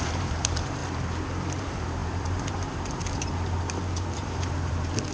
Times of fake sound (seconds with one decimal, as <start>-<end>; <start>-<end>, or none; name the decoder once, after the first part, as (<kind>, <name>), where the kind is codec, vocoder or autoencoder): 0.0-0.8 (vocoder, BigVGAN v2); 1.6-5.1